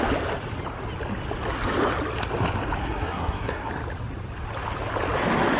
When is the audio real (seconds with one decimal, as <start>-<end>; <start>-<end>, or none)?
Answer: 0.0-2.8; 3.7-5.6